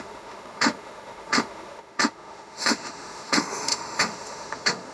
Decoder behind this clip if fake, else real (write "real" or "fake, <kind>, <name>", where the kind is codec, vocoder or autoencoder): fake, autoencoder, DAC-VAE